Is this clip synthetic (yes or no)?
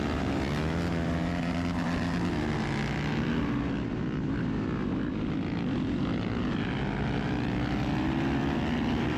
no